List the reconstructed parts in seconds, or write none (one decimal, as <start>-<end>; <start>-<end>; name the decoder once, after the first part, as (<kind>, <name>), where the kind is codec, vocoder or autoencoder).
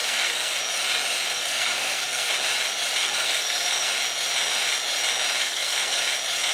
0.0-0.6 (codec, SNAC); 1.3-2.3; 3.0-3.9; 5.4-6.0